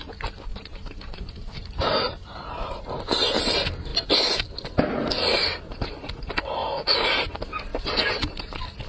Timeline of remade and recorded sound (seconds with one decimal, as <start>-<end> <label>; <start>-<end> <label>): 0.0-0.5 recorded; 0.5-2.7 remade; 2.7-6.6 recorded; 6.6-7.2 remade; 7.2-7.7 recorded; 7.7-8.4 remade; 8.4-8.9 recorded